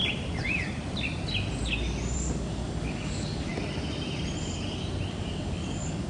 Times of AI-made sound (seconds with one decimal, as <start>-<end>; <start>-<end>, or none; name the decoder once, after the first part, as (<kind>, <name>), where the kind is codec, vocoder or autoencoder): 2.3-3.5 (codec, DAC); 5.1-6.1